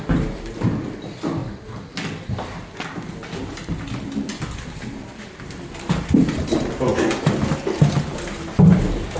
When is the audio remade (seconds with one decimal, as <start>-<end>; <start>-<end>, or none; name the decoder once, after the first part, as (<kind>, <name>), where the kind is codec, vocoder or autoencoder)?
0.0-9.2 (vocoder, BigVGAN v2)